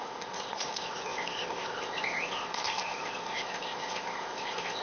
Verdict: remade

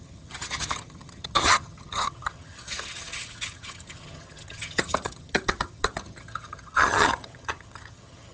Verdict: remade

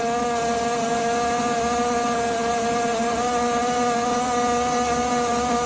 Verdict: recorded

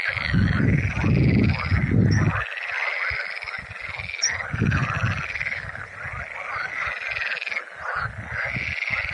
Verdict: recorded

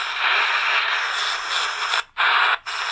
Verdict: recorded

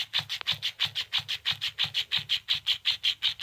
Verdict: recorded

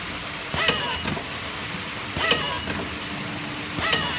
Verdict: recorded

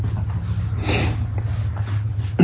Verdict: recorded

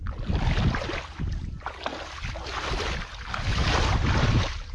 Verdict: recorded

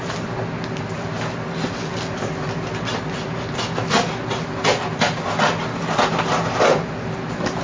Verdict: recorded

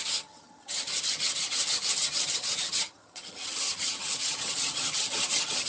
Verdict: remade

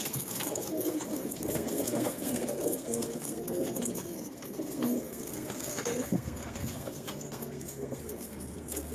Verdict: remade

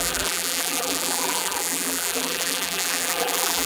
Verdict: remade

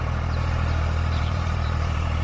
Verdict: remade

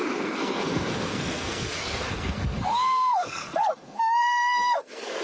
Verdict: remade